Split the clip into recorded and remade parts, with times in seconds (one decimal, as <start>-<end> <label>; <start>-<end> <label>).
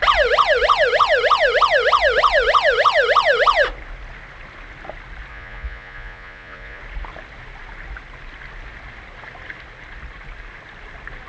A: 0.0-5.3 recorded; 5.3-6.8 remade; 6.8-11.3 recorded